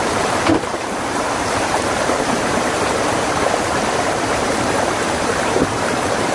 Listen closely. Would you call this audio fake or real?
fake